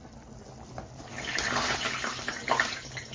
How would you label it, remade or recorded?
recorded